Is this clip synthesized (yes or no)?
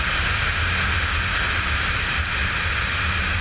no